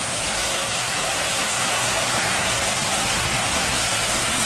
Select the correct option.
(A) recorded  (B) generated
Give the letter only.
B